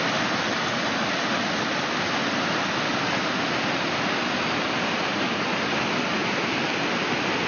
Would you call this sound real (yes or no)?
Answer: yes